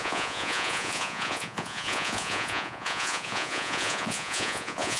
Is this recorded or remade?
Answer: remade